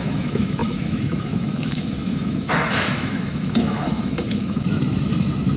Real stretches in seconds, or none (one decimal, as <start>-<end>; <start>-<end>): none